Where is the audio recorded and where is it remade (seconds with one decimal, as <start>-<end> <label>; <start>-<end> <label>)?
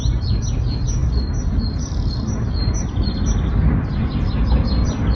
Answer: 0.0-5.1 recorded